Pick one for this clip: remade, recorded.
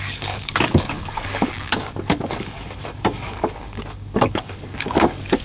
remade